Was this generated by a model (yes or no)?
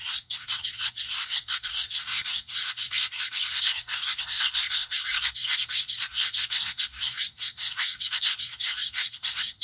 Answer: yes